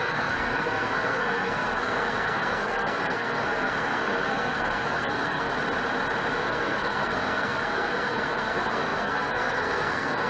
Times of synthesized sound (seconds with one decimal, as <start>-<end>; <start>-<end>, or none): 0.0-5.5; 6.3-10.3